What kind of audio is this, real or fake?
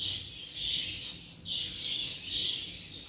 real